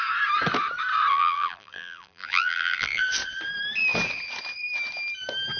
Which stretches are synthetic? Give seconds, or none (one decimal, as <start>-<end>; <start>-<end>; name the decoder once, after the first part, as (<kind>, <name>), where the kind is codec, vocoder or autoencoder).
1.1-3.0 (vocoder, BigVGAN v2)